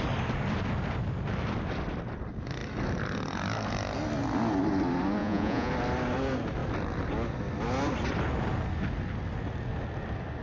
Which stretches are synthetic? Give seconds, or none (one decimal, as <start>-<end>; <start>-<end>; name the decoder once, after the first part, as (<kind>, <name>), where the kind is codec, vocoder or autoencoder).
5.2-5.7 (vocoder, Vocos)

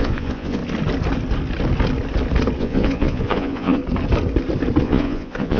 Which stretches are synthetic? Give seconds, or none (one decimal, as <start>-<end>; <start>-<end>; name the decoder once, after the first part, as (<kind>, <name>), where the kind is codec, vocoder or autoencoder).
0.0-0.6 (vocoder, Vocos); 2.6-3.8; 4.8-5.6

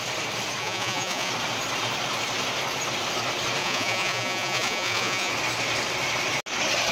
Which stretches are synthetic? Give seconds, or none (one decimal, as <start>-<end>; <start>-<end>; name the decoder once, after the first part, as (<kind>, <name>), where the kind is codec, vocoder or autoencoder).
0.6-1.3 (vocoder, Vocos); 3.6-5.3

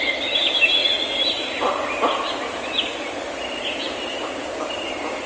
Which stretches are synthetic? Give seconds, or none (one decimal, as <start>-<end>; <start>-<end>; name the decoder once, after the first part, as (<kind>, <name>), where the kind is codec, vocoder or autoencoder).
none

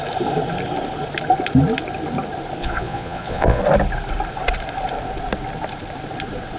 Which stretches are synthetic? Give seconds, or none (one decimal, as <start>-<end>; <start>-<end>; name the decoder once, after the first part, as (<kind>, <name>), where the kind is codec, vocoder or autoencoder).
2.6-3.6 (vocoder, Vocos)

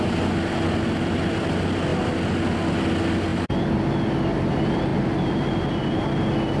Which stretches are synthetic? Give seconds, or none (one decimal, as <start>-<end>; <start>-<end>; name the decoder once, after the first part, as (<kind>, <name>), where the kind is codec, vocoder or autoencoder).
none